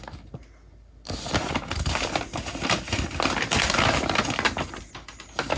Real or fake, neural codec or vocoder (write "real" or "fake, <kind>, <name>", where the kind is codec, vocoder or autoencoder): real